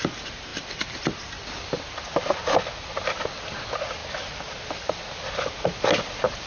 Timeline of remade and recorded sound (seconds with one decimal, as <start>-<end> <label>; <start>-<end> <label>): 0.0-0.5 recorded; 0.5-1.8 remade; 1.8-4.0 recorded; 4.0-5.6 remade; 5.6-6.5 recorded

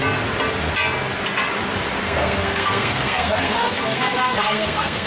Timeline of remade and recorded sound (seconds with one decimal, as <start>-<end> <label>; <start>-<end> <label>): 0.0-2.0 recorded; 2.0-5.1 remade